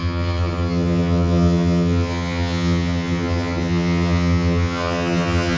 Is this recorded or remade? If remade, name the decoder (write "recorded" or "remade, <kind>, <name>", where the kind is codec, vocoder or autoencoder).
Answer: remade, vocoder, HiFi-GAN